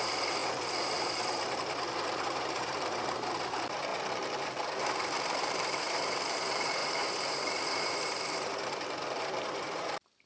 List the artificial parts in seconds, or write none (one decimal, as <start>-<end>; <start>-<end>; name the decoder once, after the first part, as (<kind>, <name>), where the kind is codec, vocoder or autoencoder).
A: 0.0-3.9 (vocoder, BigVGAN v2); 4.8-10.3